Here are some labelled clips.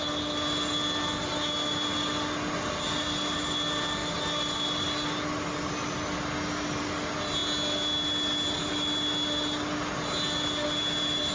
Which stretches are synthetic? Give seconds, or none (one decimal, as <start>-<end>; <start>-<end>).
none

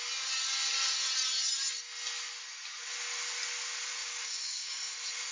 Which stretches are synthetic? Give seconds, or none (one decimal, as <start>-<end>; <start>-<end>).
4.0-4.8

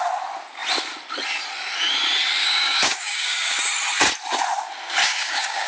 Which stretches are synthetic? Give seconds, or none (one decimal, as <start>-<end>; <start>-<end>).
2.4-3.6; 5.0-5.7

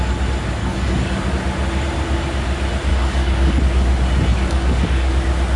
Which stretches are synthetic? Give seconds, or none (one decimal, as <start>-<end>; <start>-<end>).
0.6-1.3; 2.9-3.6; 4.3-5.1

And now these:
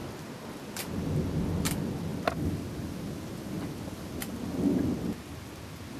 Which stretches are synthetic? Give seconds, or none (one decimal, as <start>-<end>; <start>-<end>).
none

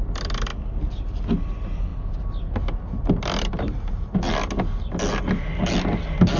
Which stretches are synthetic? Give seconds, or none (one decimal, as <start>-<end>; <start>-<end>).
none